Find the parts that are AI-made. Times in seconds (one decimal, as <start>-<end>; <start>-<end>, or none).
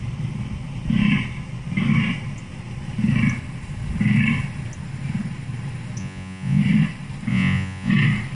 6.0-6.6; 7.3-7.9